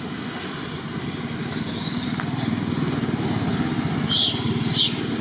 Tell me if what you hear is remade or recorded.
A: recorded